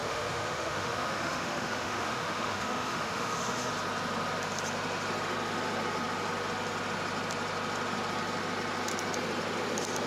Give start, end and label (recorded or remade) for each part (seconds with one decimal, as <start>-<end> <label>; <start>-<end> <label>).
0.0-3.7 remade; 3.7-10.1 recorded